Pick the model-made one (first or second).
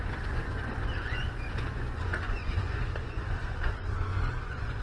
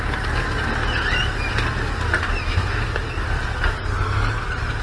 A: first